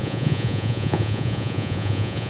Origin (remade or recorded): remade